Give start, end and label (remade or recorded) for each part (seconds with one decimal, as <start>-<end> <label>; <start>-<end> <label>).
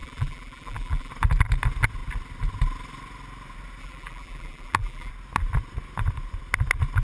0.0-1.1 remade; 1.1-3.8 recorded; 3.8-5.1 remade; 5.1-7.0 recorded